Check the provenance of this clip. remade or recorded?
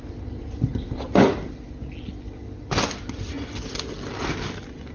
recorded